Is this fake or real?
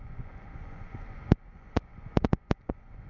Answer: fake